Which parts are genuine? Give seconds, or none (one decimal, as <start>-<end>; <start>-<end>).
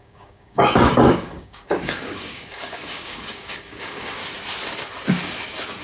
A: 4.2-5.8